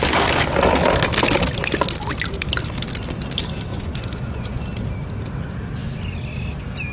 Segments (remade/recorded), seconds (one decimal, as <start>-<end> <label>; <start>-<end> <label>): 0.0-3.7 recorded; 3.7-4.6 remade; 4.6-6.9 recorded